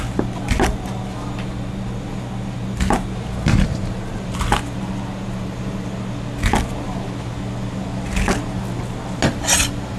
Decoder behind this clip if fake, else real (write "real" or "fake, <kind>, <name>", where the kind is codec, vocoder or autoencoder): real